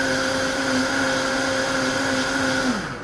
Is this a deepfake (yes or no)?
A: no